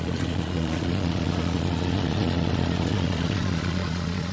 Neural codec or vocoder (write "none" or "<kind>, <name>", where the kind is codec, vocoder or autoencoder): vocoder, Vocos